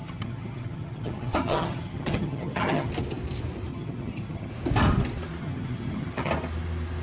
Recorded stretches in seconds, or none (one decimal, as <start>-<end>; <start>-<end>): 2.9-3.7; 4.5-5.4; 6.3-7.0